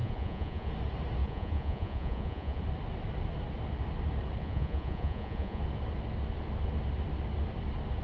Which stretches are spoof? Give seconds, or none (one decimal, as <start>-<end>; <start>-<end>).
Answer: 0.0-0.7; 1.2-2.6; 4.4-5.6